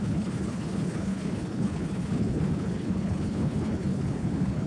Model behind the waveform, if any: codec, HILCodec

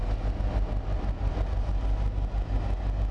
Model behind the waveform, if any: none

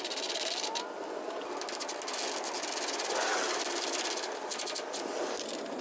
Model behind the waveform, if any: none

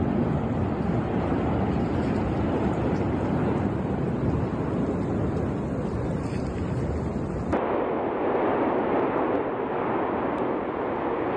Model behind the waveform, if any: none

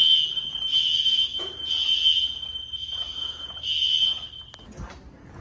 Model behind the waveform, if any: none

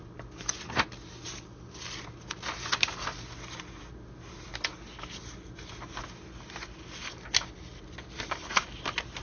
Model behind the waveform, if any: none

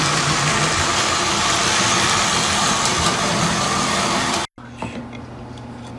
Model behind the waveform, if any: none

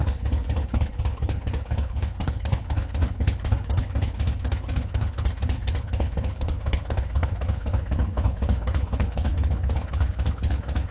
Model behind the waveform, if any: codec, HILCodec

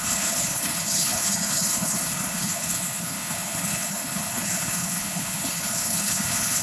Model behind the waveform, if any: codec, HILCodec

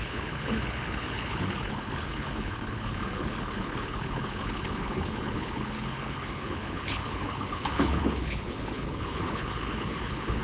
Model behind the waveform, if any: codec, HILCodec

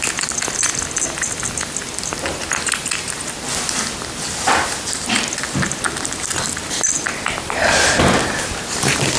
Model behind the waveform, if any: none